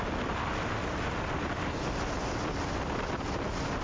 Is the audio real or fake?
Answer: real